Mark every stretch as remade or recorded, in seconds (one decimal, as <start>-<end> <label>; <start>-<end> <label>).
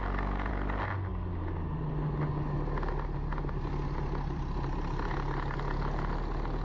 0.0-6.6 recorded